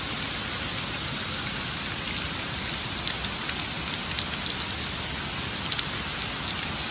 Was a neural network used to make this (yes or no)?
no